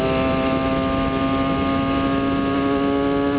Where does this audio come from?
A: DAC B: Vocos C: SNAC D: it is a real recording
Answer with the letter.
D